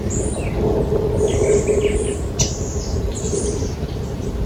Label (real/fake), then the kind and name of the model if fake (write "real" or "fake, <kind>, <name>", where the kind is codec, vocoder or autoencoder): real